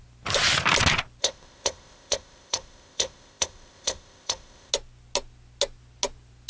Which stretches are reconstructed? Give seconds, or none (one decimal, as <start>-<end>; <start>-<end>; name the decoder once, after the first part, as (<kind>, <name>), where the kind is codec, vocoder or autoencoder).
1.2-4.7 (codec, ZipCodec)